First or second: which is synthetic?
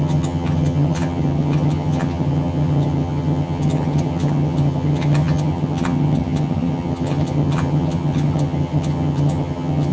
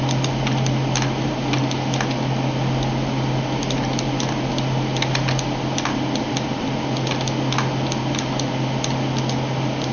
first